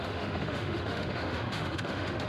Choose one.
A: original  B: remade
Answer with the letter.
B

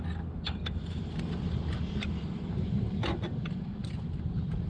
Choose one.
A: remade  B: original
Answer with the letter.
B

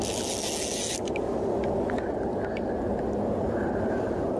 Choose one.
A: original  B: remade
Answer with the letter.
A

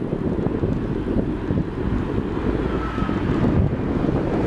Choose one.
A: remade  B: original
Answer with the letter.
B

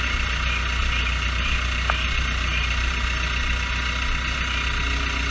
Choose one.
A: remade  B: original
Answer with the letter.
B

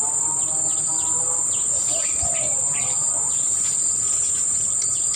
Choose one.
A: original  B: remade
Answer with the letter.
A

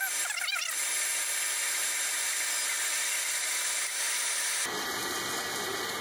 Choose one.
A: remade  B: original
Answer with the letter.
B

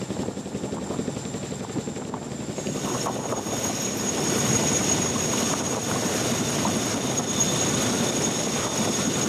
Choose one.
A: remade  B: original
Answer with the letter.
B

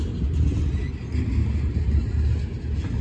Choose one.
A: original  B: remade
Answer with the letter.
A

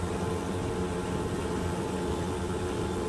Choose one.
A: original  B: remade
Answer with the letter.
A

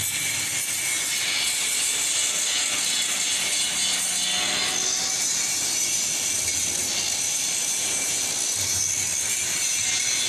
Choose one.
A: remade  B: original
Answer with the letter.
B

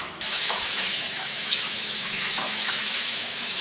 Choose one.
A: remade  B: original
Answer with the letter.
A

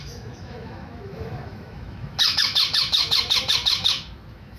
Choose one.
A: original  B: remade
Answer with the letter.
B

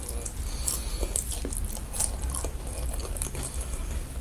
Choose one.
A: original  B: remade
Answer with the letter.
A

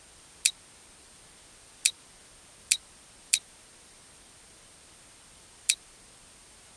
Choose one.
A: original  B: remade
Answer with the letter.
A